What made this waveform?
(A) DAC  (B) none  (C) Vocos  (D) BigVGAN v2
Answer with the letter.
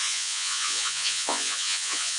C